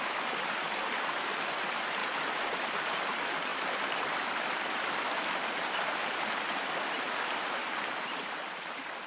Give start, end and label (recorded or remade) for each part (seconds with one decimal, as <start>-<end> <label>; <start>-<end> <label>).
0.0-2.0 remade; 2.0-2.8 recorded; 2.8-9.1 remade